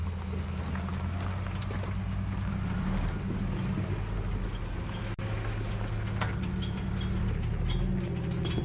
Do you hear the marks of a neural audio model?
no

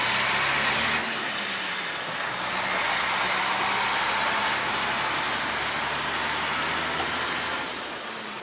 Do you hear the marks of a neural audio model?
no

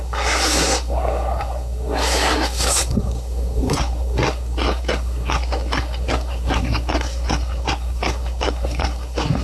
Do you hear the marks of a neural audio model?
yes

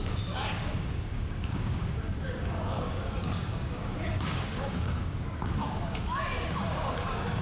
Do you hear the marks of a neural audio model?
yes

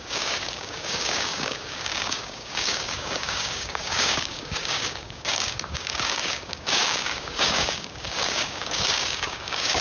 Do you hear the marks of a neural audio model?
yes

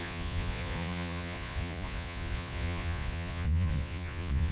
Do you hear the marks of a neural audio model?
yes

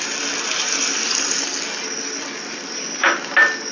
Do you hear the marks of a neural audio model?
no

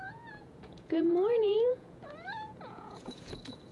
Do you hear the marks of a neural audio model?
yes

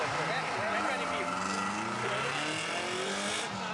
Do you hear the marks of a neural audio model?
no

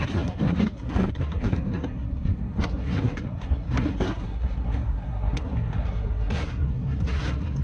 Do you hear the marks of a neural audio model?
yes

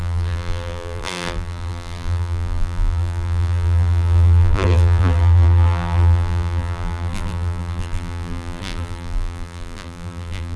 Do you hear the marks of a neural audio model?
yes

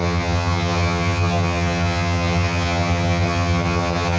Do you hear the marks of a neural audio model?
yes